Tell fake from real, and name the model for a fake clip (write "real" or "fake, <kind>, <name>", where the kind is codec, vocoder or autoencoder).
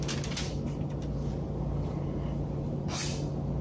real